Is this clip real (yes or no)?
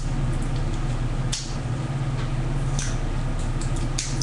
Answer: yes